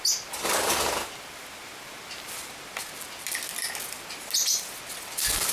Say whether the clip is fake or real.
real